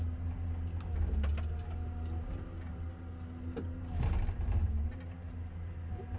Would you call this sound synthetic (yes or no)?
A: no